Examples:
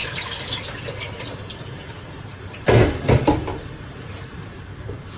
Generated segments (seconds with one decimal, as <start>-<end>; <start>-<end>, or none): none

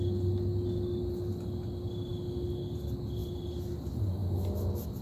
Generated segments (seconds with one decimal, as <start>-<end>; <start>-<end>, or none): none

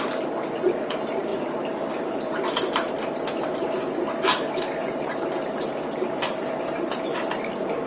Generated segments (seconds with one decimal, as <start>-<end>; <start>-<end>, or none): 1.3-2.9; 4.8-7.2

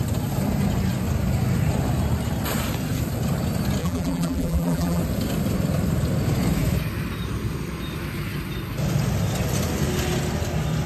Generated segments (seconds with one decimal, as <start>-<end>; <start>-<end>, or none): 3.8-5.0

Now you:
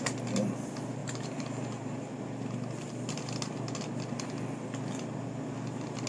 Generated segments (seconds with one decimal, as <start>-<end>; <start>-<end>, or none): 1.0-2.1